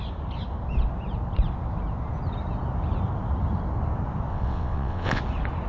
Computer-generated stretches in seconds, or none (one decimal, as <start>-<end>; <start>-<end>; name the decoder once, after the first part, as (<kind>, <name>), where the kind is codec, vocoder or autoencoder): 4.3-5.2 (vocoder, WaveNeXt)